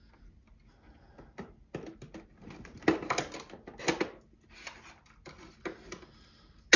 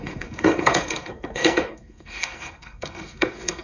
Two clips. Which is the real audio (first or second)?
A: first